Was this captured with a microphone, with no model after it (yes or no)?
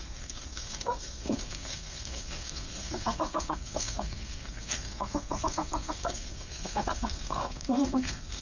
no